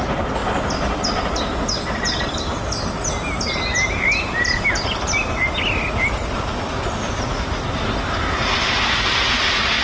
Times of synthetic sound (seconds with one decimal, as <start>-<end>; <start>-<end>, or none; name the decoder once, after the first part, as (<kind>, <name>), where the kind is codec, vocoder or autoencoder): none